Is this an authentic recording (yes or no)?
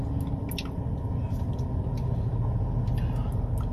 yes